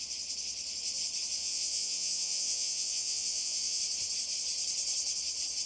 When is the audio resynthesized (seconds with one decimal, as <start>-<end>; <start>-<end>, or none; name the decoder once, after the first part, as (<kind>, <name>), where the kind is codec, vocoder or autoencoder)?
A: 1.4-3.8 (vocoder, Vocos)